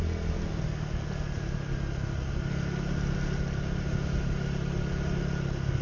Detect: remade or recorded recorded